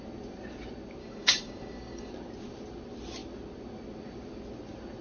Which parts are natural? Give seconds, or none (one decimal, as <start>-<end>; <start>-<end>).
0.0-1.0; 2.1-5.0